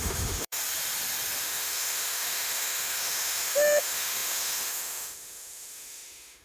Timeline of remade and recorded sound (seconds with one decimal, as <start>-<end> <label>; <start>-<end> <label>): 0.0-0.6 remade; 0.6-1.4 recorded; 1.4-6.4 remade